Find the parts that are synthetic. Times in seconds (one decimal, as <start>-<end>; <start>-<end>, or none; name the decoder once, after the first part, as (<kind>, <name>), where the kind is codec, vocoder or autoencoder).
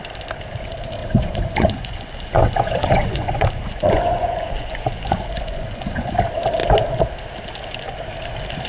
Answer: 1.0-6.1 (vocoder, Vocos)